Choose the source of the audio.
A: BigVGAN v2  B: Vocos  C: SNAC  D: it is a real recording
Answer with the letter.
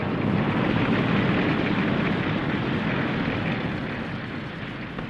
D